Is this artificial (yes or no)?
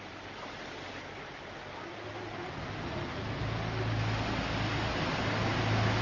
no